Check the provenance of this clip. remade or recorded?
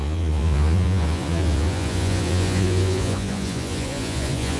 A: remade